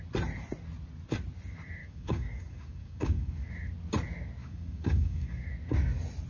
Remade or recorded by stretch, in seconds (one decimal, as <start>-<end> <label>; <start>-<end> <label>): 0.0-1.8 recorded; 1.8-3.5 remade; 3.5-4.4 recorded; 4.4-5.4 remade; 5.4-6.3 recorded